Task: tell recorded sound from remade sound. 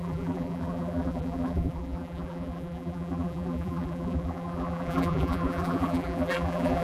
remade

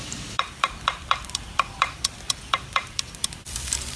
remade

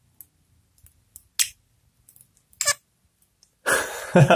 recorded